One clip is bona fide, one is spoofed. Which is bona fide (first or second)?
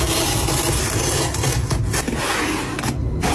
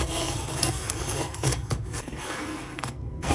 first